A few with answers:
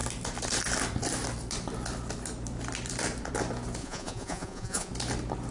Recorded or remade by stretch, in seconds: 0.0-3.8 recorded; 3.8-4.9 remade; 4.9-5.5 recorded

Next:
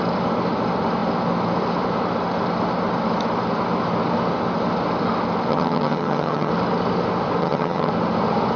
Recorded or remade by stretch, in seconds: 0.0-5.5 recorded; 5.5-6.5 remade; 6.5-7.4 recorded; 7.4-7.9 remade; 7.9-8.6 recorded

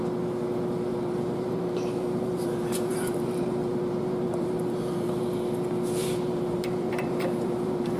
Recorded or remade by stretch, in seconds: 0.0-0.9 recorded; 0.9-5.2 remade; 5.2-6.0 recorded; 6.0-8.0 remade